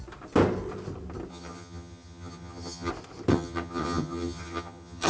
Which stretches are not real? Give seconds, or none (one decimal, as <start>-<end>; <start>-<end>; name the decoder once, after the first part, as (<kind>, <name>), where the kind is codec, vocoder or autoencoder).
1.3-2.9 (vocoder, HiFi-GAN); 3.3-5.1